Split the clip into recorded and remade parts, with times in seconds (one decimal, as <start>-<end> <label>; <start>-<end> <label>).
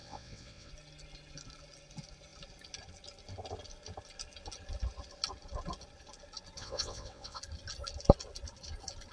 0.0-0.7 remade; 0.7-6.6 recorded; 6.6-7.4 remade; 7.4-9.1 recorded